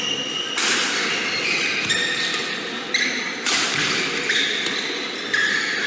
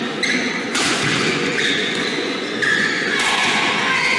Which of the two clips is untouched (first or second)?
first